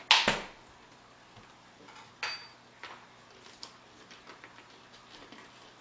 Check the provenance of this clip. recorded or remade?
recorded